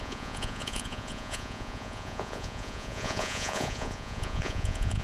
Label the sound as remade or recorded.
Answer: remade